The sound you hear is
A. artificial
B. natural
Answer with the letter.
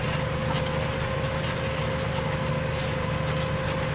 B